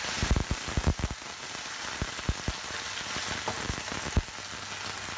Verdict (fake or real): real